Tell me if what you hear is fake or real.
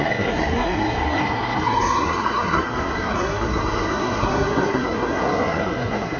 fake